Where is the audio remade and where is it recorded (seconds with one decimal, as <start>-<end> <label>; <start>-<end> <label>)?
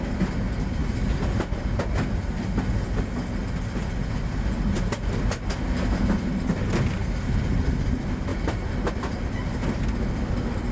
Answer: 0.0-10.7 recorded